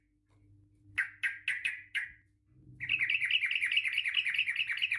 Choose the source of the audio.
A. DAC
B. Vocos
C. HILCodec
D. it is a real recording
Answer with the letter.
D